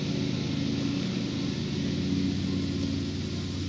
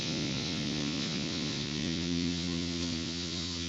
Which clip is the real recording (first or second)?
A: first